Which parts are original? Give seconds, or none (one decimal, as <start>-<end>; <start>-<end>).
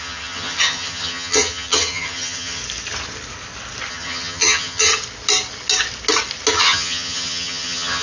2.6-3.9; 4.9-6.5